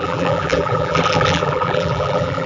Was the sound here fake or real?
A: fake